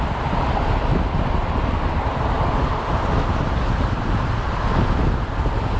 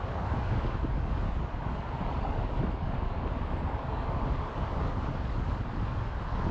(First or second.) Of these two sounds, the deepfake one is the second